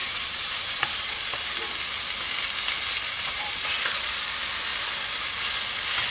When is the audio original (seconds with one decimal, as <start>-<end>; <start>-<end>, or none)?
1.2-3.1; 4.1-6.1